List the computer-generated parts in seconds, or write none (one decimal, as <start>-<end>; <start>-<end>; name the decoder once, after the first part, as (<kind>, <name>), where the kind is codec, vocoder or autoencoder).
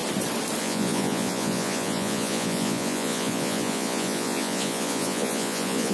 0.6-5.9 (vocoder, Vocos)